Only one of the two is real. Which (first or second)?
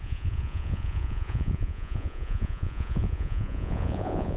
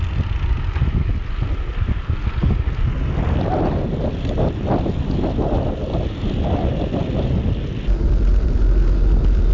second